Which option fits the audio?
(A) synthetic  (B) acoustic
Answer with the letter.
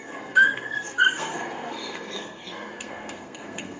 A